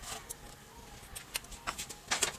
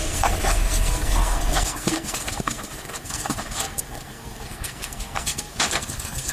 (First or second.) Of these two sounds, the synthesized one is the second